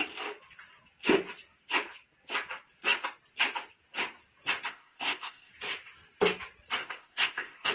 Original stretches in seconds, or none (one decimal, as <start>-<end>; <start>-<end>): 0.0-4.7; 5.5-6.8